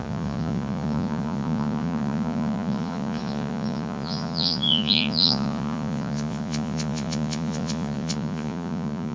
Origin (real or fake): fake